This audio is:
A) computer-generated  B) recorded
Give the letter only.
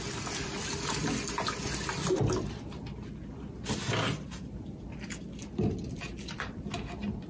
B